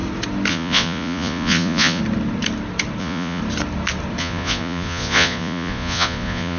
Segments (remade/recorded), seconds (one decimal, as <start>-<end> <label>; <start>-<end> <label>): 0.0-0.5 recorded; 0.5-2.0 remade; 2.0-3.0 recorded; 3.0-3.4 remade; 3.4-4.2 recorded; 4.2-6.6 remade